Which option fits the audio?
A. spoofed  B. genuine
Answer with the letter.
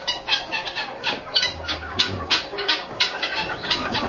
A